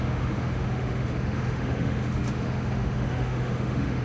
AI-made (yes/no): yes